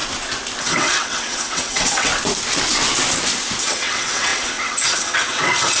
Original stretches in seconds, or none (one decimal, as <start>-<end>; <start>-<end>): 0.0-0.6; 2.1-3.6